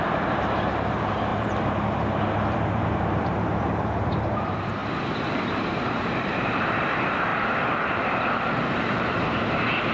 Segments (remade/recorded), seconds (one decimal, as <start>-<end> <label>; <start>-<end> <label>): 0.0-7.3 remade; 7.3-8.5 recorded; 8.5-9.9 remade